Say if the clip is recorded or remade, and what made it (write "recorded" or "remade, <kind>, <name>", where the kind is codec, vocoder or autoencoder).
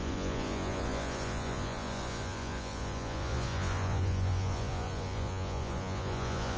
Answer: remade, vocoder, Vocos